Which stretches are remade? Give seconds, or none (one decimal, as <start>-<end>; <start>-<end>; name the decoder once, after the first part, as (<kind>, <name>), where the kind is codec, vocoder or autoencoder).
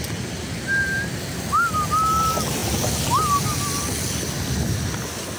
none